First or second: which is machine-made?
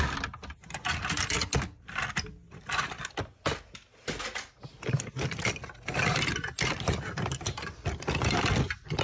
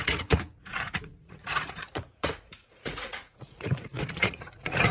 second